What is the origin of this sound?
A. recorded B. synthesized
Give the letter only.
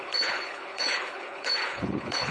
B